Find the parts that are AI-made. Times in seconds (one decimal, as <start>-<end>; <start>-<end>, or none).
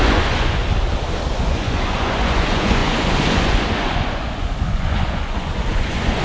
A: 0.0-0.6; 1.3-6.2